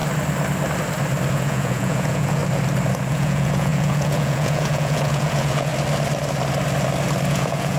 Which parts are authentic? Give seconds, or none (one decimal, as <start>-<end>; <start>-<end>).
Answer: 0.0-1.3; 2.4-3.1; 5.7-7.3

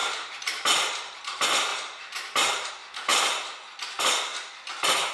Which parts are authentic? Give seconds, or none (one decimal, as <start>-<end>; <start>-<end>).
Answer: 1.2-1.7; 2.7-5.1

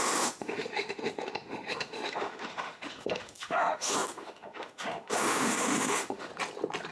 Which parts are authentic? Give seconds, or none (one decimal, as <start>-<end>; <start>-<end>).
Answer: 6.3-6.9

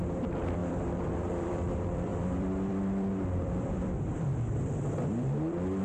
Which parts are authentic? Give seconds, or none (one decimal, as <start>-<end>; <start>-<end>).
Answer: none

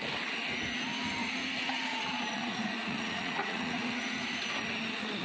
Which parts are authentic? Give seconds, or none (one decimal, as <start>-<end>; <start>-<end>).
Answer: 0.0-1.2; 4.3-5.2